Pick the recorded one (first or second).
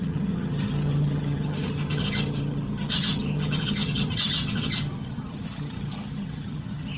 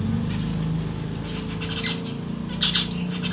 second